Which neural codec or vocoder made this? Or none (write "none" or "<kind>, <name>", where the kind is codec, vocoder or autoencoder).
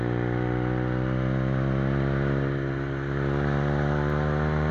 none